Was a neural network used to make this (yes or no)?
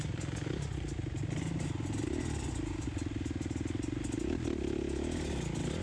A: no